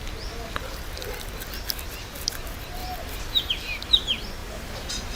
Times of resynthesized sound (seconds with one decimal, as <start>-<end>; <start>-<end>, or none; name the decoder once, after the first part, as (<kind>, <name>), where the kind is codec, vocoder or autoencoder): none